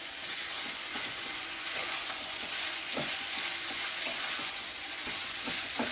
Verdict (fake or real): fake